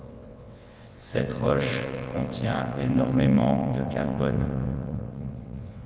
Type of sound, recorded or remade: remade